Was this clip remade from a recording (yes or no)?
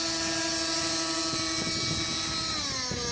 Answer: no